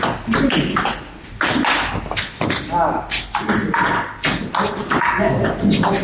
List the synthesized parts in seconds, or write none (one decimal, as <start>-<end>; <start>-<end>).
4.8-5.5